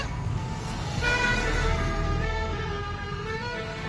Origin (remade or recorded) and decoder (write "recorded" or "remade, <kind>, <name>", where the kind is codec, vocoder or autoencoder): remade, codec, SNAC